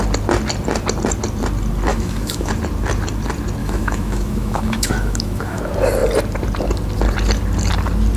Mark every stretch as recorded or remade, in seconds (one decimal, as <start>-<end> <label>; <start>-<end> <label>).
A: 0.0-1.9 recorded; 1.9-2.5 remade; 2.5-3.6 recorded; 3.6-5.6 remade; 5.6-8.2 recorded